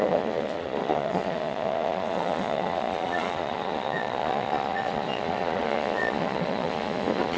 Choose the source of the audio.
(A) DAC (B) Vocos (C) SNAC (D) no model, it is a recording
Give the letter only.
B